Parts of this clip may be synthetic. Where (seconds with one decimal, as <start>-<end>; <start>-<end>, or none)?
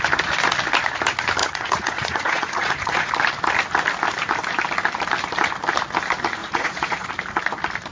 1.4-3.1; 6.4-7.1